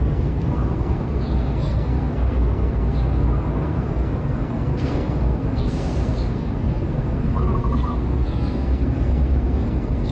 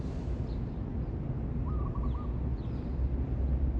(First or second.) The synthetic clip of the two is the first